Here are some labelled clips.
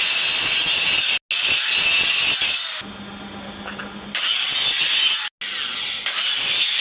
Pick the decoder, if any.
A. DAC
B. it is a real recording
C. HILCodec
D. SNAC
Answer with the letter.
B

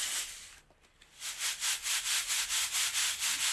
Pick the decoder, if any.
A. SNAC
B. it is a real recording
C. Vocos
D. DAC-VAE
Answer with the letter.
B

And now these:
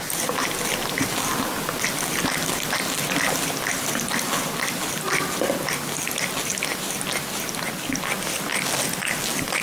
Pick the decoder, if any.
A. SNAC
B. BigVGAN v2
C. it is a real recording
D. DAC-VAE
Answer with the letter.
C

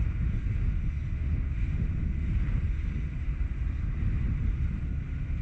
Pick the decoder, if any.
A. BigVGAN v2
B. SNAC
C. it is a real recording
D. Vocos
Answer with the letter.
C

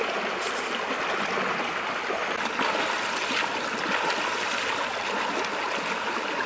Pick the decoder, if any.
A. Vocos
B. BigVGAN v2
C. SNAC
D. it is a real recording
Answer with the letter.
D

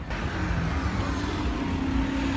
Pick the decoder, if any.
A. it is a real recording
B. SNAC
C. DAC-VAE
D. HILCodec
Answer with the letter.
A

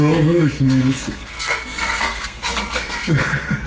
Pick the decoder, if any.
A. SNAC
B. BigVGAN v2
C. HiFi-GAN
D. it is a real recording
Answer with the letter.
A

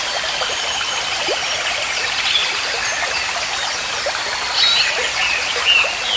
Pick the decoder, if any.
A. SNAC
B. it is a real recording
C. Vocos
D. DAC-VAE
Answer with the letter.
B